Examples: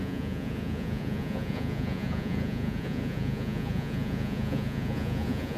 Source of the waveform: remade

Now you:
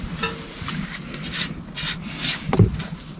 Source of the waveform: recorded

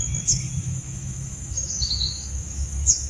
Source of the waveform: remade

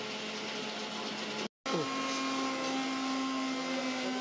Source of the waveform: recorded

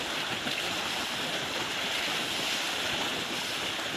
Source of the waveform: recorded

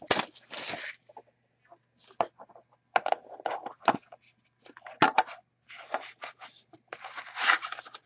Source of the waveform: recorded